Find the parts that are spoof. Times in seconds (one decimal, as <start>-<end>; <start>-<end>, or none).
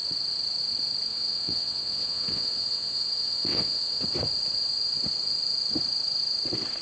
1.1-4.0